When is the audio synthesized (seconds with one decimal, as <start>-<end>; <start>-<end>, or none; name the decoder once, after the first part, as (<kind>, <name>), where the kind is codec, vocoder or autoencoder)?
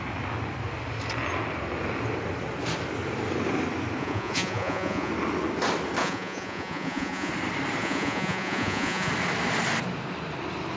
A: 4.0-5.1 (vocoder, Vocos); 6.0-7.3; 7.8-9.1